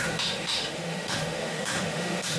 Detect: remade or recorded remade